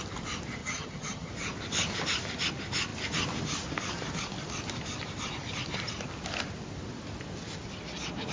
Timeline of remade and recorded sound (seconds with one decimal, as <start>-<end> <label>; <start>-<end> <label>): 0.0-0.6 recorded; 0.6-1.3 remade; 1.3-8.3 recorded